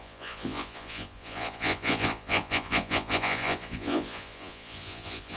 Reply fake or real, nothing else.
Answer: fake